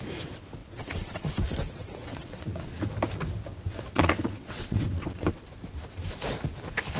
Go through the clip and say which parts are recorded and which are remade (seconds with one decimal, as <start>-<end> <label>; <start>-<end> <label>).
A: 0.0-0.6 recorded; 0.6-1.3 remade; 1.3-1.8 recorded; 1.8-2.8 remade; 2.8-3.5 recorded; 3.5-5.4 remade; 5.4-7.0 recorded